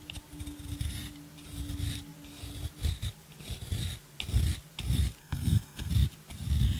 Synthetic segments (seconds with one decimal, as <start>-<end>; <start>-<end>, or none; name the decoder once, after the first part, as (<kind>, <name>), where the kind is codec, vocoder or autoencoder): 5.2-5.9 (codec, SNAC)